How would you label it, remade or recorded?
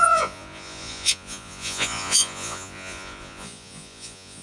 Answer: remade